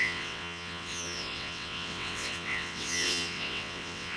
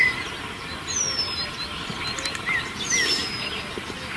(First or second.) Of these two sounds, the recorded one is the second